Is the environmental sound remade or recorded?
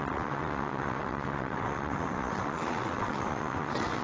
remade